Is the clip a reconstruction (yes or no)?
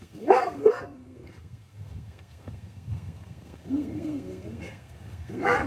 yes